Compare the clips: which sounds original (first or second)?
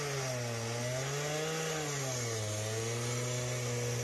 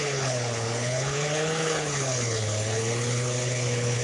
first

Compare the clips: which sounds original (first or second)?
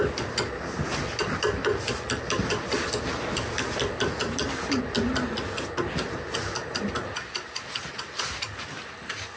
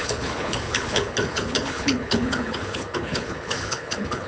first